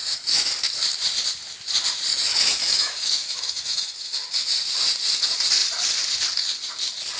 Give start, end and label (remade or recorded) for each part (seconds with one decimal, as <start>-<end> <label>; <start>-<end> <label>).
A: 0.0-0.5 remade; 0.5-2.1 recorded; 2.1-4.0 remade; 4.0-7.2 recorded